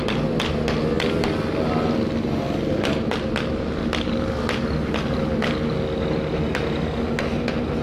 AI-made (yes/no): no